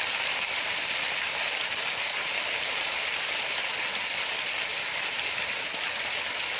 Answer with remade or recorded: remade